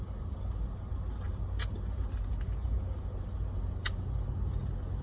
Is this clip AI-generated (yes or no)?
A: no